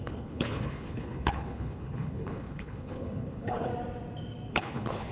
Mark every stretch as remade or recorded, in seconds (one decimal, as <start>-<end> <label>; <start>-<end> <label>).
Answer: 0.0-3.7 remade; 3.7-4.5 recorded; 4.5-5.1 remade